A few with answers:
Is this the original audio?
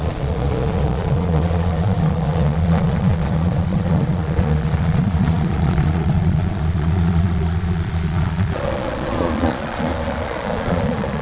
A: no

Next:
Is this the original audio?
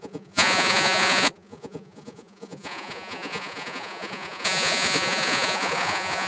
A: no